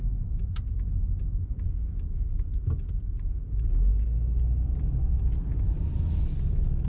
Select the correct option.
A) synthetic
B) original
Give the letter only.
B